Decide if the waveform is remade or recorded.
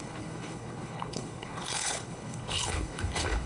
remade